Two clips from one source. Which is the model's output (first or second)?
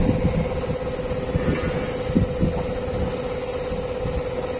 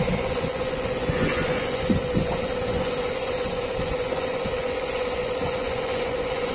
second